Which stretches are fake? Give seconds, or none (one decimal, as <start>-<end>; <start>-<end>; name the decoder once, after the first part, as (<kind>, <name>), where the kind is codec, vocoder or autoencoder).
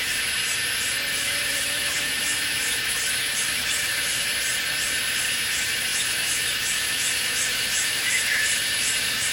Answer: 0.0-0.4 (autoencoder, DAC-VAE); 1.1-4.3; 5.1-9.3